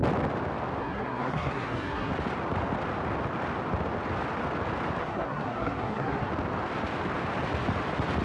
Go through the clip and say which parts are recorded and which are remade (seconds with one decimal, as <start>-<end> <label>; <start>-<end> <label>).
0.0-0.8 recorded; 0.8-2.1 remade; 2.1-5.0 recorded; 5.0-6.3 remade; 6.3-8.2 recorded